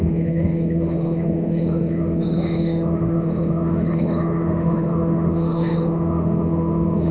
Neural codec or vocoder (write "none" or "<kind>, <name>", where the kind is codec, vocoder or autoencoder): autoencoder, DAC-VAE